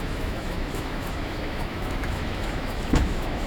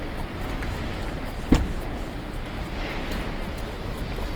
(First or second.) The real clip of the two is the second